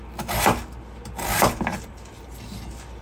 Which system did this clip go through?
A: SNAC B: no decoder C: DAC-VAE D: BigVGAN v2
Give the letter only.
B